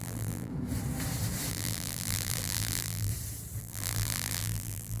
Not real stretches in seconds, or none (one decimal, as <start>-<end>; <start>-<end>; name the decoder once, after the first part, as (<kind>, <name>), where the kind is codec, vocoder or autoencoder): 0.0-0.5 (vocoder, BigVGAN v2); 1.5-3.1; 3.6-5.0